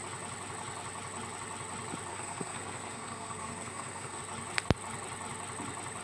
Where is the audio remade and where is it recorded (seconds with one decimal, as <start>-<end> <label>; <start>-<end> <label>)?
0.0-2.1 recorded; 2.1-4.2 remade; 4.2-6.0 recorded